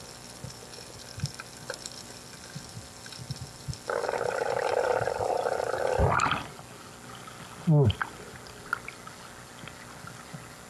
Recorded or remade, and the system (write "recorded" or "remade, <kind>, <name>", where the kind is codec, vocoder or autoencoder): recorded